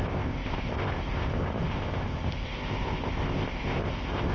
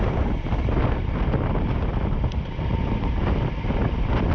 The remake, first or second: first